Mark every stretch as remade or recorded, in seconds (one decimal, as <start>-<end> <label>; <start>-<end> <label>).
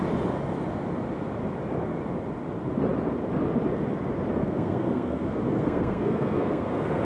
0.0-4.4 recorded; 4.4-7.0 remade